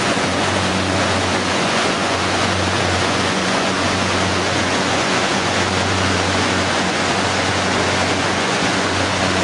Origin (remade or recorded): remade